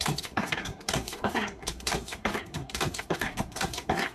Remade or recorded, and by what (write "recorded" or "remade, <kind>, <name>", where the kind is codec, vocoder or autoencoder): remade, codec, SNAC